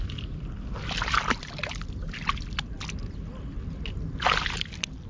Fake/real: real